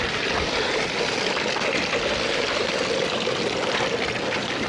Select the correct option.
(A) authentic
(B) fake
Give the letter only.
A